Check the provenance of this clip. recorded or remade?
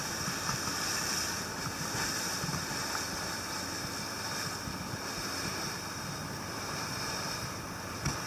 recorded